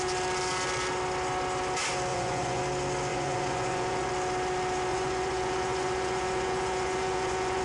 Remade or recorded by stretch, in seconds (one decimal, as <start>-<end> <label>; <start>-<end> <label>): 0.0-2.1 recorded; 2.1-2.6 remade; 2.6-3.1 recorded; 3.1-4.1 remade; 4.1-4.9 recorded; 4.9-7.6 remade